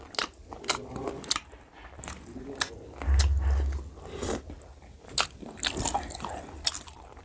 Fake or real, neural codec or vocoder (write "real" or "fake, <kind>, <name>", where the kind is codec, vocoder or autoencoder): real